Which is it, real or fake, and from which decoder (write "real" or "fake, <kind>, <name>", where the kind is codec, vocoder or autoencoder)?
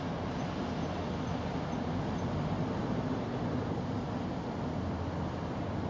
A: real